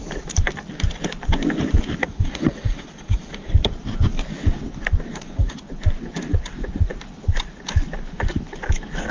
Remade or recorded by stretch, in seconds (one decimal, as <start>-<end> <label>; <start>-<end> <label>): 0.0-2.0 recorded; 2.0-3.5 remade; 3.5-5.1 recorded; 5.1-5.6 remade; 5.6-9.1 recorded